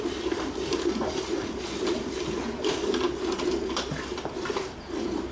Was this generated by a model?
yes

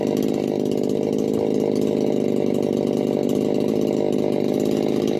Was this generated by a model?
no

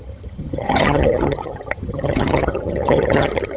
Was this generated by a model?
yes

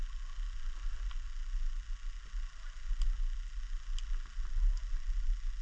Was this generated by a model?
no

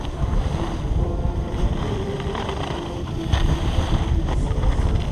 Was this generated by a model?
no